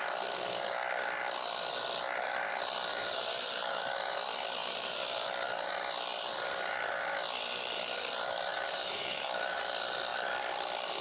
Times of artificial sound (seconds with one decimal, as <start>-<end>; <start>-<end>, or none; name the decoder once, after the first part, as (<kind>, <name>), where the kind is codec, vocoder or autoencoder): 2.9-3.8 (vocoder, BigVGAN v2); 4.6-5.3; 8.5-9.6